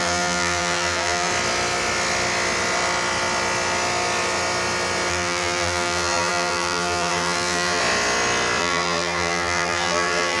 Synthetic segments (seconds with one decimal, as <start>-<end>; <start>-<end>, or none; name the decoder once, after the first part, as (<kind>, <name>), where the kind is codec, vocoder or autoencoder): 0.0-1.3 (vocoder, BigVGAN v2); 5.1-7.8; 8.6-10.4